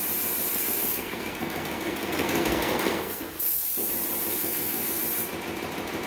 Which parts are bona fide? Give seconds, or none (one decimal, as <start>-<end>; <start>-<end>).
0.0-0.5; 3.9-4.3; 5.0-6.1

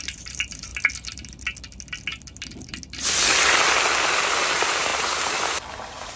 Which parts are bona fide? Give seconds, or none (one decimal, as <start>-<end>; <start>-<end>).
0.7-4.3

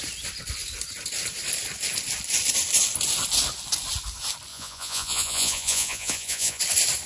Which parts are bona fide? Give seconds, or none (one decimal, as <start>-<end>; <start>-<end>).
0.0-4.5; 6.6-7.1

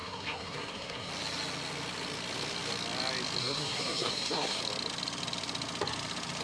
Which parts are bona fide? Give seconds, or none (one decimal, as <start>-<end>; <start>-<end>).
1.1-3.4; 4.6-6.4

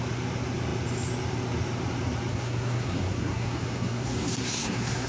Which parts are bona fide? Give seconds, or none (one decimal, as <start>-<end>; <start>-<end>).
0.0-2.3

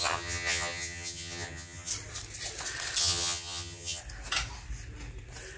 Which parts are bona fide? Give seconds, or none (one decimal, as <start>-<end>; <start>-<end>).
1.9-3.0; 4.0-5.6

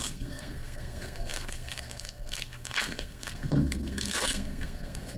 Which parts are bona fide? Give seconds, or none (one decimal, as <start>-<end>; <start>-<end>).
none